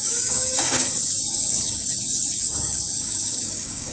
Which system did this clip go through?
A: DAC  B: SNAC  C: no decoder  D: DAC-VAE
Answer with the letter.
A